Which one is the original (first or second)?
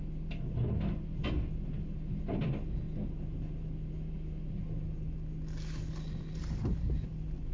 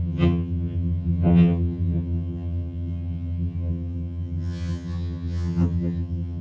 first